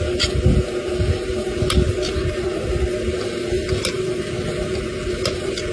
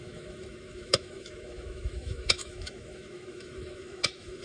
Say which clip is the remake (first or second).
second